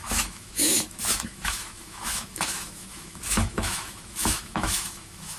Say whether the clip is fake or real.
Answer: fake